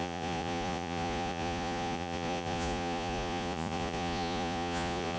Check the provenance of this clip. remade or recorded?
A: remade